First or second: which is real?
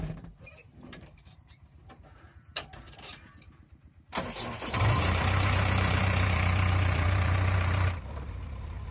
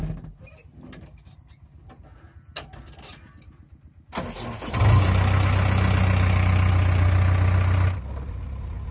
second